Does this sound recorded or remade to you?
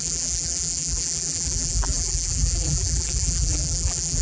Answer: remade